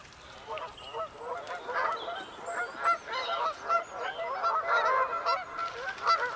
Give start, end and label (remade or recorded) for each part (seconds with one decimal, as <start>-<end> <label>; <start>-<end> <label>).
0.0-6.4 recorded